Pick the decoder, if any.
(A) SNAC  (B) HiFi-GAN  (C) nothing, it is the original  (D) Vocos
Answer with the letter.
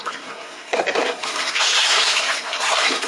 A